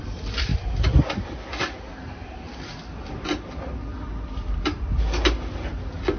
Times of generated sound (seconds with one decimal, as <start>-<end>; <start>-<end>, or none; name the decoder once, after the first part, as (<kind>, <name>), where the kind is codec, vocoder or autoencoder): none

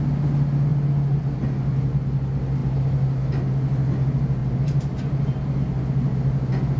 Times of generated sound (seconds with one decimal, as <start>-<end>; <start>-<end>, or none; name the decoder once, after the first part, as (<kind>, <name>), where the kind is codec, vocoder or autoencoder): 4.4-5.6 (vocoder, BigVGAN v2)

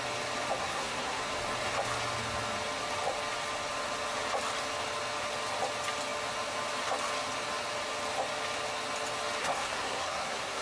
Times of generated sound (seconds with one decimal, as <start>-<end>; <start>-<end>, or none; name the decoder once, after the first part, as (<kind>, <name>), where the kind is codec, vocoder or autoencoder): 0.6-1.2 (codec, SNAC); 9.4-10.6